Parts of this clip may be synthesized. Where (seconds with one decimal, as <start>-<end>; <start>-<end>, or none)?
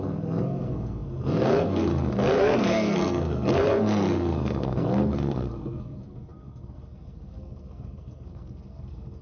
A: 0.0-9.2